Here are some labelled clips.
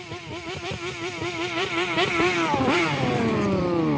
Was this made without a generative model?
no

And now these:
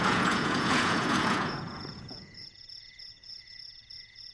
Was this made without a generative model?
no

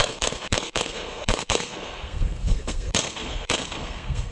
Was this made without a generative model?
no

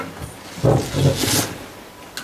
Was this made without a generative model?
yes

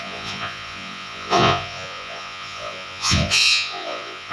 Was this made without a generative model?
no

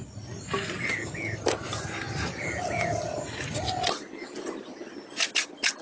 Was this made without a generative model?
yes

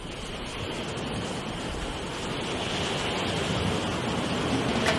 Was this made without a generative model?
yes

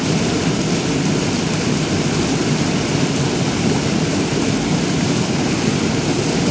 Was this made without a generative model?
yes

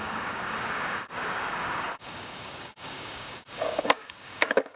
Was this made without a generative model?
no